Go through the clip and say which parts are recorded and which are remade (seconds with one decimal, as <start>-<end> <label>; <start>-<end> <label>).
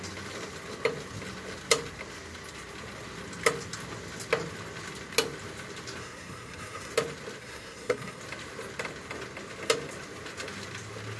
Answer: 0.0-6.0 recorded; 6.0-6.9 remade; 6.9-7.4 recorded; 7.4-8.2 remade; 8.2-11.2 recorded